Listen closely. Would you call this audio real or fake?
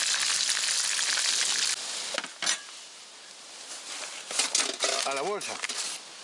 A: real